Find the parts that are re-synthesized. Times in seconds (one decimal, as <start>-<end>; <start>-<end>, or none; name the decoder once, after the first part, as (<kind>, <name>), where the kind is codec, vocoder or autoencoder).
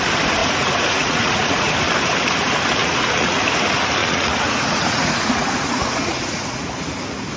0.4-1.7 (vocoder, Vocos); 2.8-3.4; 4.0-6.7